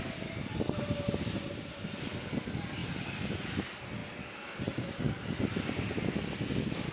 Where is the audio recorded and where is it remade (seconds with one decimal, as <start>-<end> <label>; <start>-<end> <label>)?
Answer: 0.0-6.9 recorded